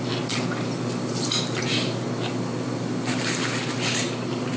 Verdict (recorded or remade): recorded